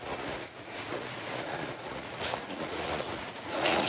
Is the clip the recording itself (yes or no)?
no